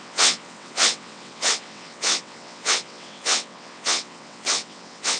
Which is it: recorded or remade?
remade